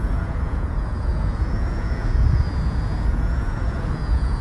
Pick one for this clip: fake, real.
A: fake